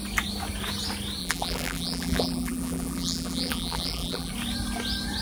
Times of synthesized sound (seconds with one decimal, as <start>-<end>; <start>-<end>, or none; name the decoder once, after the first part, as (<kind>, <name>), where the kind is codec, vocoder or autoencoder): 1.2-4.3 (vocoder, BigVGAN v2)